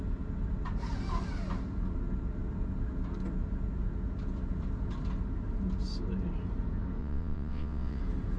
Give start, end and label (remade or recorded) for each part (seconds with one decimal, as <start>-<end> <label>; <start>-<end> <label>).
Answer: 0.0-7.0 recorded; 7.0-8.0 remade; 8.0-8.4 recorded